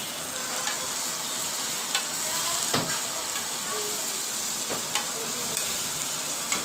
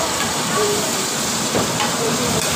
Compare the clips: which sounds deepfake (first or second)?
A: second